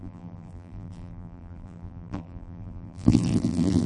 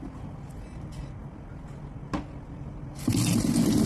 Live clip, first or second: second